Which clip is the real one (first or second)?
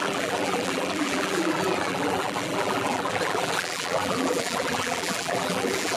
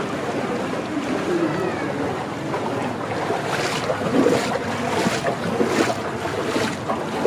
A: second